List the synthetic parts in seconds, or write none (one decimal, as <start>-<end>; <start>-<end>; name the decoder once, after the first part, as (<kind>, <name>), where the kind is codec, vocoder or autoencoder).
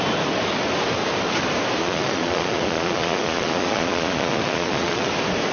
1.8-5.1 (vocoder, Vocos)